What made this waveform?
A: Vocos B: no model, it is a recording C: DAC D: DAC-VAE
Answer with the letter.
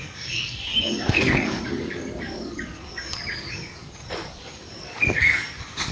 C